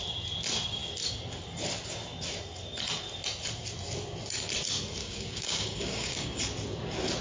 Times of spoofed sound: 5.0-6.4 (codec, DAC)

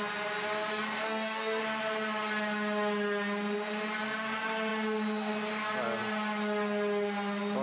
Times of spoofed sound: 0.7-1.6 (codec, DAC)